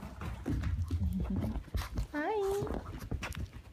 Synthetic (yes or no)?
no